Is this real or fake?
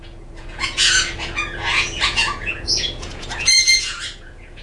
fake